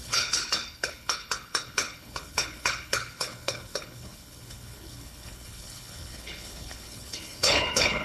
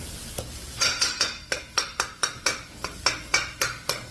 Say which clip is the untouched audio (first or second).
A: second